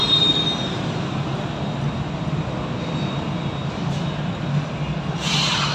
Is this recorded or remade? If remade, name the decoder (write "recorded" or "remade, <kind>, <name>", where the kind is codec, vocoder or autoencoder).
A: recorded